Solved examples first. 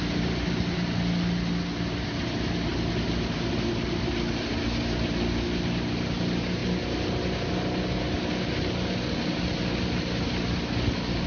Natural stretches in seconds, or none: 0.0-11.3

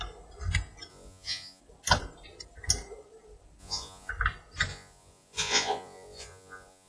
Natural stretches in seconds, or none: 0.0-0.9; 1.6-3.6; 4.1-4.7

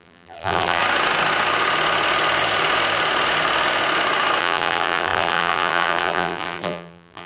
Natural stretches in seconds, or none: 0.8-4.4